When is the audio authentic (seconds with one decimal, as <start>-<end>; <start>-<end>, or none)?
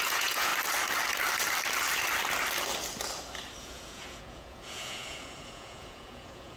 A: 0.5-3.6